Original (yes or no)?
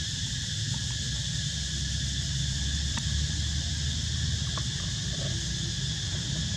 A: no